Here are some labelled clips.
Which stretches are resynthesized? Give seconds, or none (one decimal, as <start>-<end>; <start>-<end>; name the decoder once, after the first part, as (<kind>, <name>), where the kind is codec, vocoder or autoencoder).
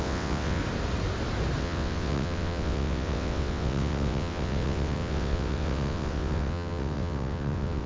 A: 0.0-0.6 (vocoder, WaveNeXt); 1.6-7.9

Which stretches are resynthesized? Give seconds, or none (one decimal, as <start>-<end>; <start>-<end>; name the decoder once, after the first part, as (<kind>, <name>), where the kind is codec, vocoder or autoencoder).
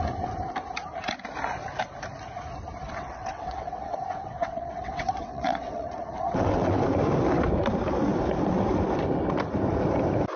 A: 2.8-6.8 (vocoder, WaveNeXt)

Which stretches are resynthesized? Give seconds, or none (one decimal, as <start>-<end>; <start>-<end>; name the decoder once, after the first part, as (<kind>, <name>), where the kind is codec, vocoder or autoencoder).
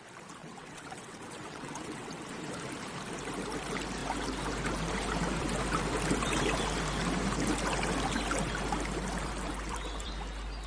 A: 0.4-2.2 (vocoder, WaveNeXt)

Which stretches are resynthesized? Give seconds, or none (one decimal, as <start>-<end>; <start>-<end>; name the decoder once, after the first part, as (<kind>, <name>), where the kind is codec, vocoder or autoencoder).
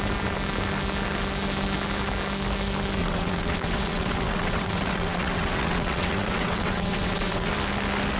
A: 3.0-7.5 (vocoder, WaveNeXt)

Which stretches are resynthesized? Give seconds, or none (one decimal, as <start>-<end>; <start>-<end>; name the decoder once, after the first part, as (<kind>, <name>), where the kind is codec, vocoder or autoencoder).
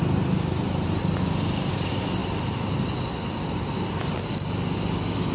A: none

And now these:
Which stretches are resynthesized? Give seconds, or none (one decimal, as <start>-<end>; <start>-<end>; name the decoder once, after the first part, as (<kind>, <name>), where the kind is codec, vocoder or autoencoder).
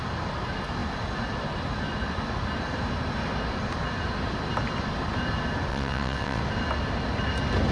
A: 5.7-6.4 (vocoder, WaveNeXt)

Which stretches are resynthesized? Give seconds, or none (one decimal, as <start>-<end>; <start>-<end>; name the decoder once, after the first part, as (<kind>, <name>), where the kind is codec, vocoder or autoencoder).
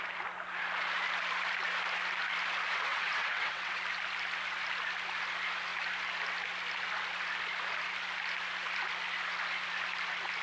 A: 2.9-3.8 (vocoder, WaveNeXt)